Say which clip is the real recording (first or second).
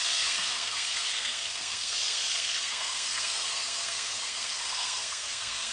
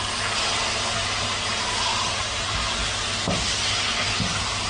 second